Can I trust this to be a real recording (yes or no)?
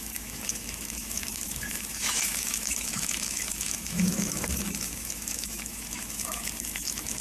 no